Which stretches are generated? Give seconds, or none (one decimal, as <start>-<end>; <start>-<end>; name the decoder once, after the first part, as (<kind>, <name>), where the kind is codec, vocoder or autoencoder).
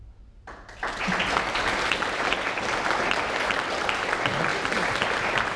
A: none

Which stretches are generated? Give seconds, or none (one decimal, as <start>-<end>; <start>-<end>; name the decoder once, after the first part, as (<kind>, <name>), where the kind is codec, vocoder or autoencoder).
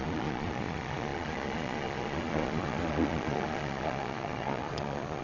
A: 0.0-5.2 (vocoder, Vocos)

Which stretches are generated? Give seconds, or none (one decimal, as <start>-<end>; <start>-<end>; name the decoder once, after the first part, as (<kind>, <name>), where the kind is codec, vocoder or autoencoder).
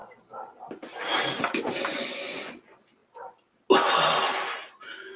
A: 1.9-2.6 (vocoder, Vocos)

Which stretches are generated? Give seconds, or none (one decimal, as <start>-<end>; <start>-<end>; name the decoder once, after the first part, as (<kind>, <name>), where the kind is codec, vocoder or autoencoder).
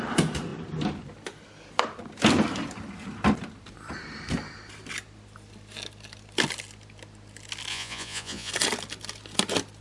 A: 7.7-8.5 (vocoder, Vocos)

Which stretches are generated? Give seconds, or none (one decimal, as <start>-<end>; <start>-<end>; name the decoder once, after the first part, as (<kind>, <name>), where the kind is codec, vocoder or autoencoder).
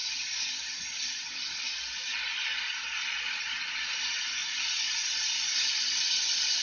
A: none